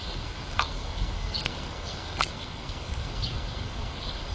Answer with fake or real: fake